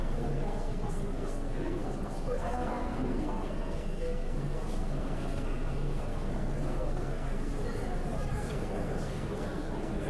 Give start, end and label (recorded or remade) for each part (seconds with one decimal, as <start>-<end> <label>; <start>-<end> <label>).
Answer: 0.0-7.5 remade; 7.5-8.3 recorded; 8.3-10.1 remade